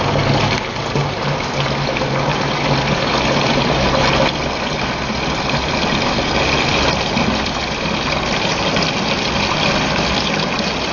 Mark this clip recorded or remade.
recorded